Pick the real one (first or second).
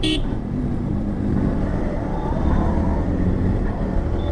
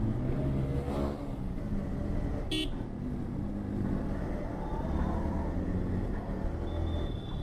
second